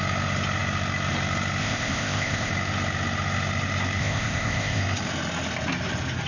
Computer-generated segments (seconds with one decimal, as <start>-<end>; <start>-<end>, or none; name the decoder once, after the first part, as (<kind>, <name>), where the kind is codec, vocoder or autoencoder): 1.6-2.5 (codec, ZipCodec); 4.0-4.8